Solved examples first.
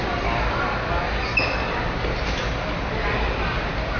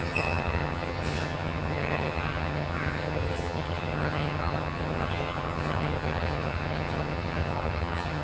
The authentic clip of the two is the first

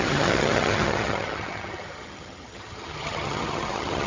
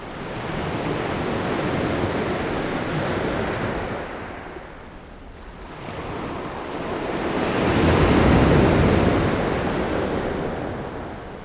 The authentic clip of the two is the second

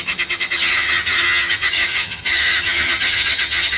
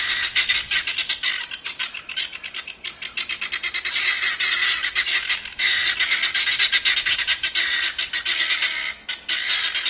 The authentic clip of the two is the second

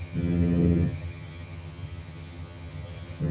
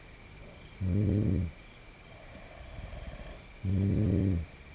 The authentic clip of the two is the second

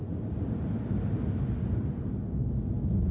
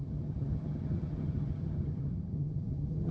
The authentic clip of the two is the first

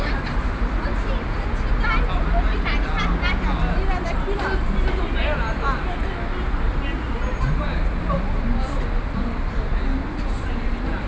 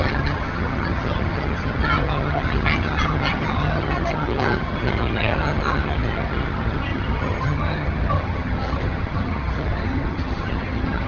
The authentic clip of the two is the first